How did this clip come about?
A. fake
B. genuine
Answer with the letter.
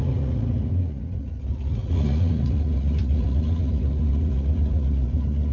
A